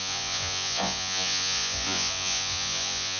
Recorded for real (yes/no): no